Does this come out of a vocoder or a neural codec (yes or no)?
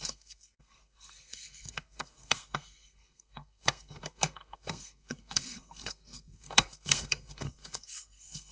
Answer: yes